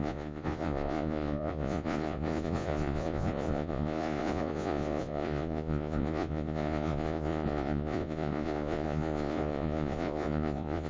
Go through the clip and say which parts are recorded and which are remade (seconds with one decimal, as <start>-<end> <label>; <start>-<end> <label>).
0.0-10.9 remade